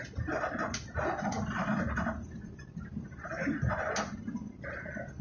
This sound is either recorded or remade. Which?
recorded